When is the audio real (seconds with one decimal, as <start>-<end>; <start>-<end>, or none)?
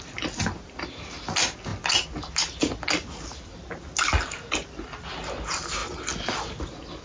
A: 0.0-7.0